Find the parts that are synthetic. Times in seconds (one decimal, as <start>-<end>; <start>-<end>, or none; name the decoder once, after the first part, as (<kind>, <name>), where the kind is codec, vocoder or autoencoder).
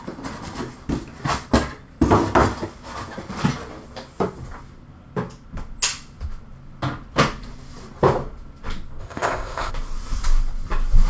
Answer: 9.0-9.7 (codec, ZipCodec)